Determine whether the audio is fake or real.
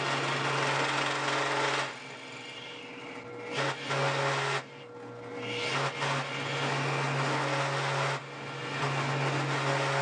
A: real